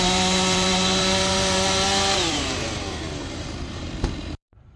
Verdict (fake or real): fake